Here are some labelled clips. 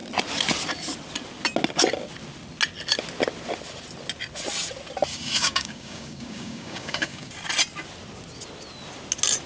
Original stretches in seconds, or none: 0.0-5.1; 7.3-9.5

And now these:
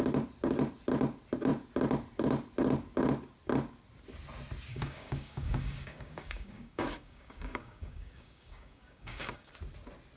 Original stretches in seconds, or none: 0.0-4.7; 9.5-10.2

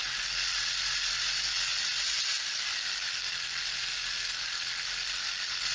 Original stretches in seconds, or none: 0.0-5.7

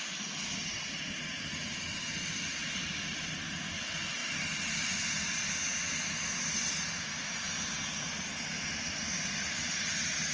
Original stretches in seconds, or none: 0.0-10.3

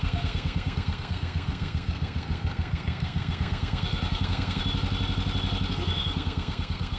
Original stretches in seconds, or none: 4.6-5.7

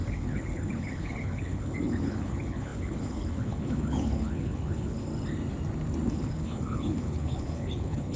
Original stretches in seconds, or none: 5.1-6.1

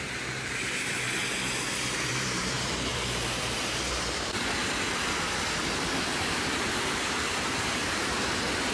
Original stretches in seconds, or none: 1.2-2.1; 4.6-6.0